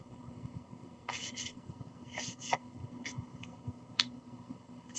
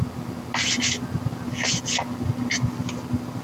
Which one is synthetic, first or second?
first